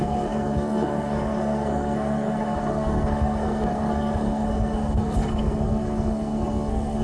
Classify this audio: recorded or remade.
remade